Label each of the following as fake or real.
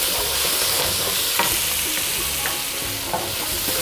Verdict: real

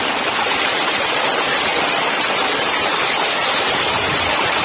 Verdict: real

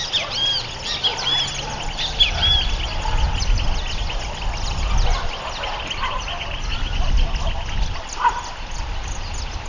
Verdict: real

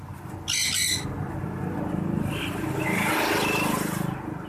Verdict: real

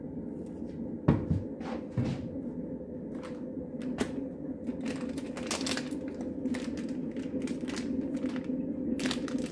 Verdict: real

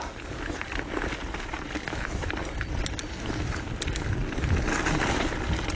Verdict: real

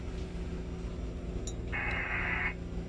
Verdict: real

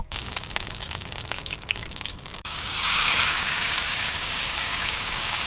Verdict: fake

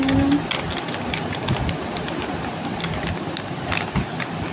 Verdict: real